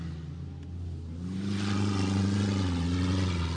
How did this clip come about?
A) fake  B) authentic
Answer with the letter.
B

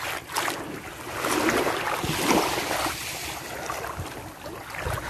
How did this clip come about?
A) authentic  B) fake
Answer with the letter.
A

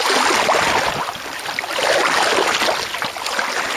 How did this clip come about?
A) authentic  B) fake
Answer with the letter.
A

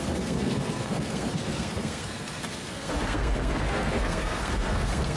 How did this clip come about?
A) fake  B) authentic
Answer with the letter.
A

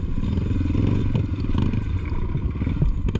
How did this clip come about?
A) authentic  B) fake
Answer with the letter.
A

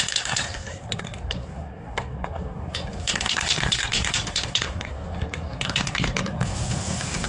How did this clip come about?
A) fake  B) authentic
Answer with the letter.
A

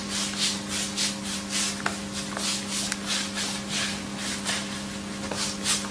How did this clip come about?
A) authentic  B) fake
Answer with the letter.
A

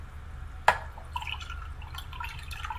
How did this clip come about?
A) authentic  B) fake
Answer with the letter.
A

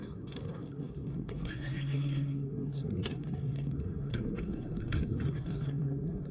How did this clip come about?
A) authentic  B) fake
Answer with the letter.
B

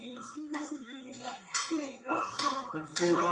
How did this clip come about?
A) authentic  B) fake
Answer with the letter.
B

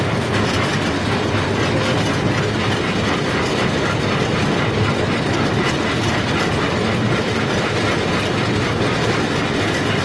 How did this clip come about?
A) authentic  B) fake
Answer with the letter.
A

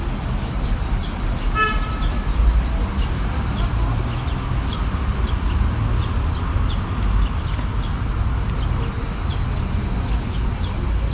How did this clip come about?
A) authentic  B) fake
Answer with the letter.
A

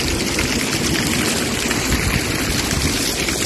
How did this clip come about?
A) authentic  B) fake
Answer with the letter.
A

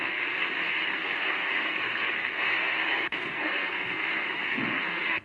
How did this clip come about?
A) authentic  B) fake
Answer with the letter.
B